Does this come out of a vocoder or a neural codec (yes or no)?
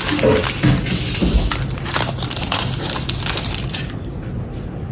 no